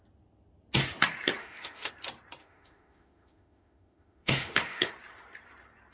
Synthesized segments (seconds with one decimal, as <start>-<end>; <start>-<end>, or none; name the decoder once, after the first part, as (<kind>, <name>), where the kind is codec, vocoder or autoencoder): 1.4-1.9 (autoencoder, DAC-VAE); 2.4-4.9